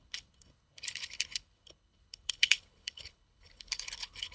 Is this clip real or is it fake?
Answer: fake